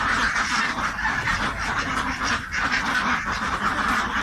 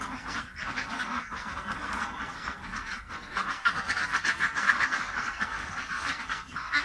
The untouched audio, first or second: first